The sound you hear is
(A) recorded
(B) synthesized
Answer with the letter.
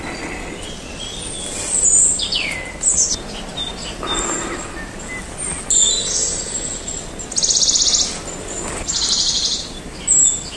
A